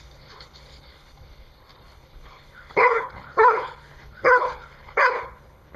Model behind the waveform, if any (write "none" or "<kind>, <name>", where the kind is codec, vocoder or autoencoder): codec, HILCodec